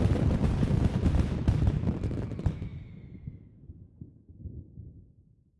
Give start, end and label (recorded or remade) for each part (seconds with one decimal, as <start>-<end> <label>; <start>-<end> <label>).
0.0-5.6 recorded